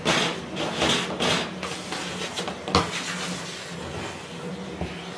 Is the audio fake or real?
real